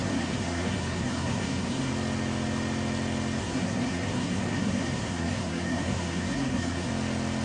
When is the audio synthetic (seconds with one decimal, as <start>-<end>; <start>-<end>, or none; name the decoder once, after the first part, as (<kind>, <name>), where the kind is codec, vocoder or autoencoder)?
0.0-1.9 (codec, SNAC); 3.4-6.9